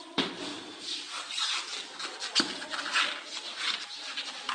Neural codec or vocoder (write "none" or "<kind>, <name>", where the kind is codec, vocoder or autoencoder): none